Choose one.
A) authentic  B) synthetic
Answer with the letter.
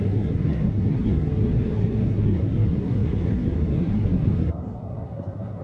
B